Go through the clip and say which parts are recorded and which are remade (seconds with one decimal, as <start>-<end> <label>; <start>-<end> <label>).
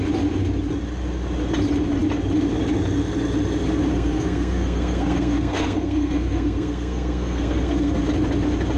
0.0-3.9 recorded; 3.9-8.0 remade; 8.0-8.8 recorded